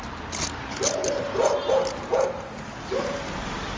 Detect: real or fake real